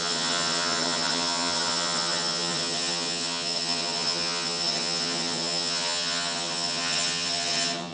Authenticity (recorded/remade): remade